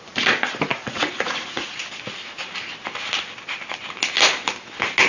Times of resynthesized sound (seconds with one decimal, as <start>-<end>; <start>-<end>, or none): 0.7-1.8

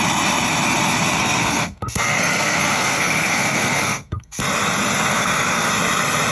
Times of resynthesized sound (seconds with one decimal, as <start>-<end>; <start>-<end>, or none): 1.2-4.4; 5.1-5.7

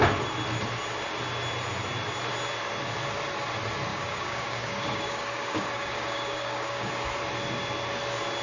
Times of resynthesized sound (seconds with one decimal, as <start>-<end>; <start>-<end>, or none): 3.9-6.9

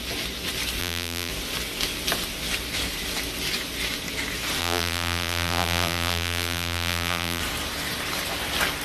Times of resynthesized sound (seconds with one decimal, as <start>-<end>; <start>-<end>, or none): 0.8-1.3; 4.6-7.4